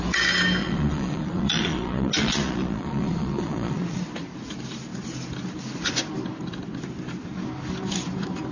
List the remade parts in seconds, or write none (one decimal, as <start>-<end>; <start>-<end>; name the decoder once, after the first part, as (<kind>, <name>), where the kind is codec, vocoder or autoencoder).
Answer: 0.6-4.0 (vocoder, Vocos)